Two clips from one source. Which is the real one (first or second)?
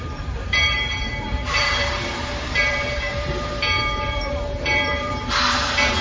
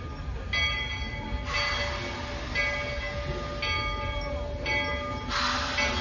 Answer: second